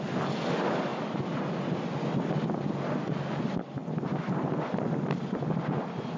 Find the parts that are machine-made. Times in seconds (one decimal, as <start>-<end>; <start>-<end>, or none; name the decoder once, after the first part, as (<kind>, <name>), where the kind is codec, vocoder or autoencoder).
none